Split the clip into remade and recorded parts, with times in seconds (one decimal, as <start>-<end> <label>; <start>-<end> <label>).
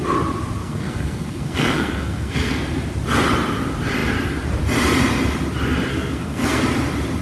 0.0-0.6 recorded; 0.6-2.6 remade; 2.6-5.9 recorded; 5.9-6.6 remade; 6.6-7.2 recorded